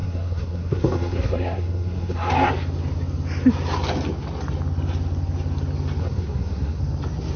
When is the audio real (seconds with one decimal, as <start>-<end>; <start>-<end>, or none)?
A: 2.5-6.0; 6.8-7.4